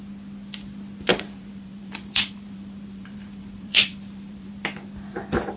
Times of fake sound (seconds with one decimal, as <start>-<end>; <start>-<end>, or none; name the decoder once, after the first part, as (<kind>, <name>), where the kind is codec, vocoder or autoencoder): 1.1-4.5 (vocoder, BigVGAN v2)